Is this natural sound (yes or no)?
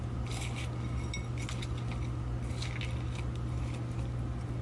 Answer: yes